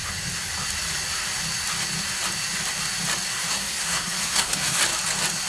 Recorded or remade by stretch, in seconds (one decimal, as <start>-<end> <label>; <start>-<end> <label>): 0.0-3.3 recorded; 3.3-4.8 remade; 4.8-5.5 recorded